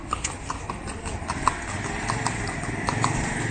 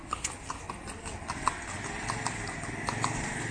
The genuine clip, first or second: second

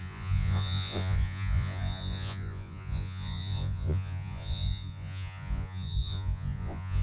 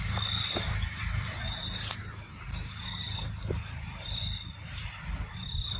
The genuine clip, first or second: second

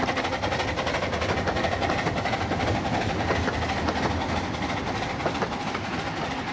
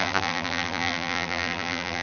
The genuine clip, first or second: first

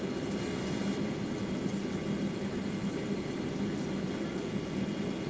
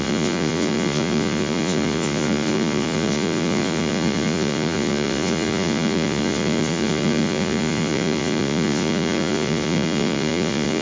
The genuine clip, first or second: first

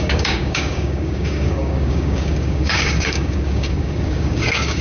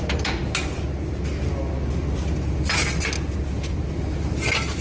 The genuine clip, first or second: second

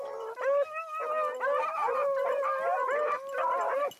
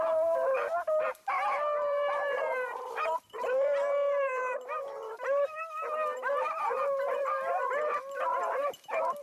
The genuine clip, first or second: first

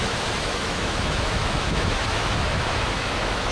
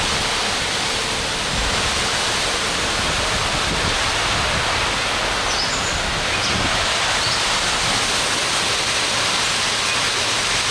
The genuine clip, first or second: second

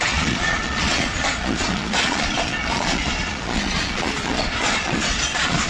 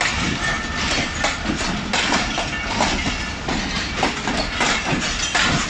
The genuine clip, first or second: second